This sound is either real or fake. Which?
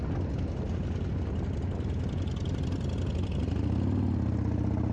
real